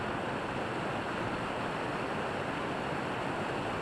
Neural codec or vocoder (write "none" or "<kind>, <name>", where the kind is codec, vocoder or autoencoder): none